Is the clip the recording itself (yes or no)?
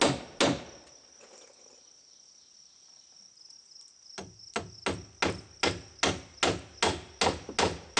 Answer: yes